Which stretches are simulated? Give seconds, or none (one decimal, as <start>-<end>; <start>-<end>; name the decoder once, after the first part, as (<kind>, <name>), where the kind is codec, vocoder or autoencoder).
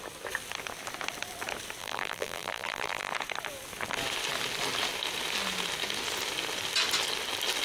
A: 1.8-3.1 (vocoder, BigVGAN v2)